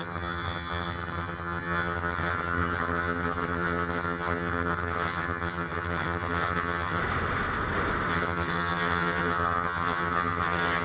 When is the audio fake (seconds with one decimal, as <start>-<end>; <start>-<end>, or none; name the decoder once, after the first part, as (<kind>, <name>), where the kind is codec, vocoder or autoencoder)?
0.0-7.0 (vocoder, HiFi-GAN); 8.1-10.8